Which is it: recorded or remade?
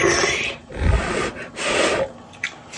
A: recorded